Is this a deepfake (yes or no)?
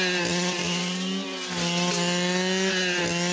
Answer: no